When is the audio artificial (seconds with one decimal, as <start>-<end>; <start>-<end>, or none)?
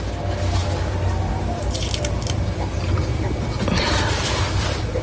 3.1-5.0